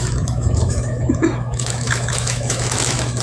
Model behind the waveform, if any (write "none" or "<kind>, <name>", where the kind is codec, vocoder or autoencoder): autoencoder, DAC-VAE